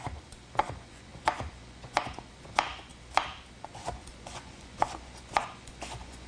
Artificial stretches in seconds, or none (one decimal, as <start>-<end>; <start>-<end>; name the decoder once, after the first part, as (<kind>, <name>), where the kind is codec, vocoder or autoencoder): 0.0-2.9 (vocoder, Vocos); 3.6-6.3